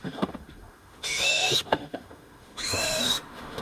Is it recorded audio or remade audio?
remade